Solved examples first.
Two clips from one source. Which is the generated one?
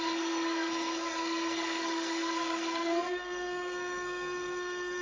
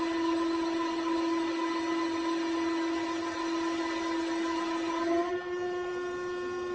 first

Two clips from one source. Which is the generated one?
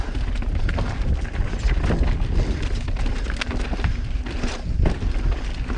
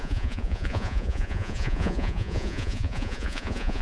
second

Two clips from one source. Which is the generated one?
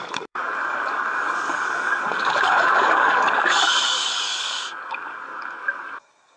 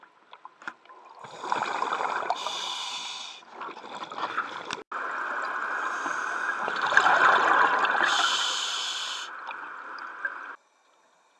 first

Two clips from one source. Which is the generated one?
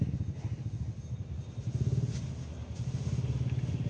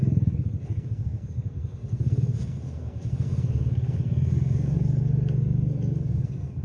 second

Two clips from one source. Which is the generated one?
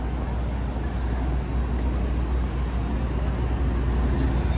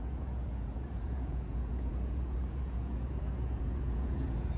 second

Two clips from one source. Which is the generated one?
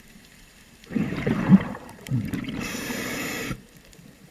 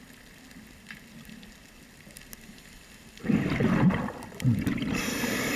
first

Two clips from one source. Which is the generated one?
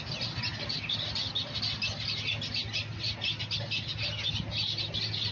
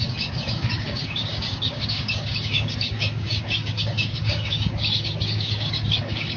second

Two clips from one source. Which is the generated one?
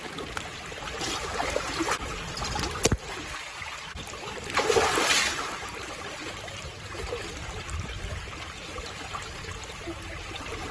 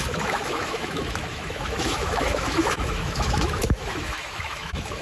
second